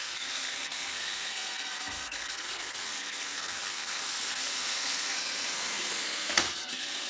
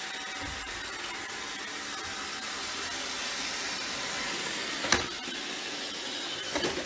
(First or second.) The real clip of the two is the second